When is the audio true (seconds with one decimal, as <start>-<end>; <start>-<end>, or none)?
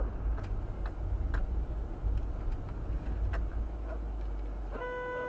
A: 0.0-5.3